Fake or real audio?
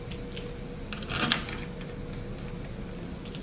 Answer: real